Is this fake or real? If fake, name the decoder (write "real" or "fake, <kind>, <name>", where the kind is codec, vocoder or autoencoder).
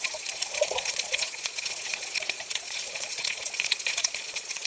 fake, vocoder, Vocos